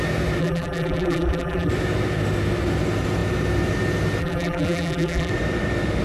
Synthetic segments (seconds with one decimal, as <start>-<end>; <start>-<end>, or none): 0.4-1.7; 4.2-5.3